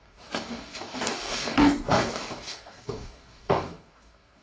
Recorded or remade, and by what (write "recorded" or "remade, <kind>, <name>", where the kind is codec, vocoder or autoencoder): remade, codec, DAC